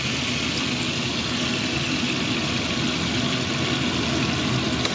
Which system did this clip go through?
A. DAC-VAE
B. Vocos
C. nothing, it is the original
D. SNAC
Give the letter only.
C